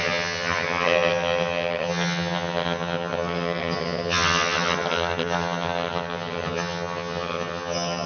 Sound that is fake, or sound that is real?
fake